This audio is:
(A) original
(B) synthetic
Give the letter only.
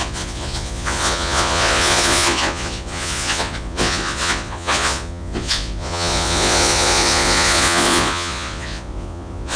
B